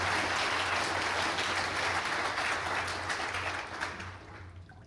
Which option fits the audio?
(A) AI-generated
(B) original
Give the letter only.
B